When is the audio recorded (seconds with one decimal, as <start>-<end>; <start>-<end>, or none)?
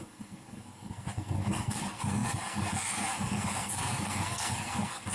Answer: none